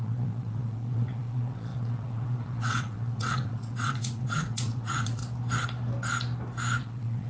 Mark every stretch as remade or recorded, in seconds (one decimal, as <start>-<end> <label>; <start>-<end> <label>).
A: 0.0-5.2 remade; 5.2-6.8 recorded; 6.8-7.3 remade